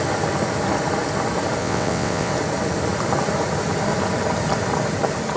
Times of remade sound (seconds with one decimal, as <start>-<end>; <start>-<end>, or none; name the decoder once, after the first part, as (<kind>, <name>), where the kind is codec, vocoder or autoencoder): 1.6-2.3 (vocoder, WaveNeXt)

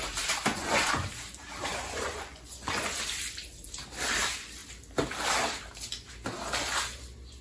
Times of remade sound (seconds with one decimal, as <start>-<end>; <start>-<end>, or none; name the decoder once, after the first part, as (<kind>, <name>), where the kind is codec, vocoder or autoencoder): 0.5-1.1 (vocoder, Vocos); 1.7-3.0

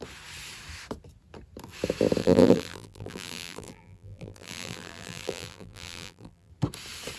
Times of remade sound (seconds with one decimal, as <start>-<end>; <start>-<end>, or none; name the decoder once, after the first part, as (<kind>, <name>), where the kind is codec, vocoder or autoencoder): 2.2-6.5 (vocoder, BigVGAN v2)

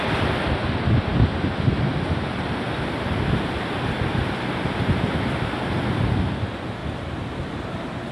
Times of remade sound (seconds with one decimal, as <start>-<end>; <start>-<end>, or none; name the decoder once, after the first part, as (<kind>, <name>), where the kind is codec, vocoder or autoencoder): none

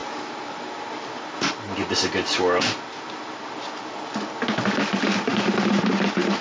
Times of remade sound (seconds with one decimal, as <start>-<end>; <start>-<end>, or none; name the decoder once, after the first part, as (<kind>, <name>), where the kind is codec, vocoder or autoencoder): none

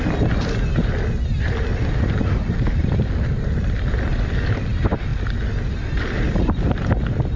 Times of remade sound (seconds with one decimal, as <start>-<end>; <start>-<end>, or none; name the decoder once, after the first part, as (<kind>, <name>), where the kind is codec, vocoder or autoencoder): none

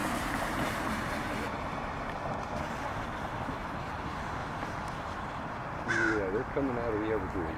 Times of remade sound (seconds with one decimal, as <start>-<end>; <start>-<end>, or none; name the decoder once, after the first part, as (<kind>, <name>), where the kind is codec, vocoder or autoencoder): 0.0-2.0 (vocoder, BigVGAN v2); 4.4-6.1